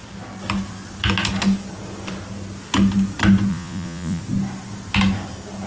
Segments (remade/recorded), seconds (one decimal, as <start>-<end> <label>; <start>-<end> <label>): 0.0-3.5 recorded; 3.5-4.2 remade; 4.2-5.7 recorded